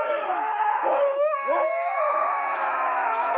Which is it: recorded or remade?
remade